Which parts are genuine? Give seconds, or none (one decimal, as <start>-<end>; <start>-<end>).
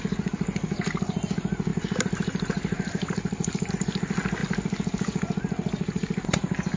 0.0-1.7; 3.7-6.8